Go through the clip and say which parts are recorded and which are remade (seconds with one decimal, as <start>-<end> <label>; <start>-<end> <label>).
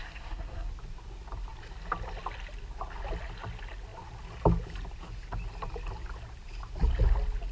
0.0-0.7 remade; 0.7-7.5 recorded